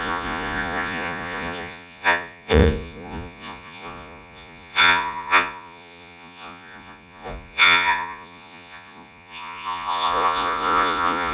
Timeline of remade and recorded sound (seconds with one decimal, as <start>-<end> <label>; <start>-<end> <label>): 0.0-11.3 remade